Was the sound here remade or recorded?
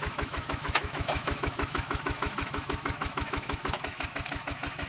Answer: remade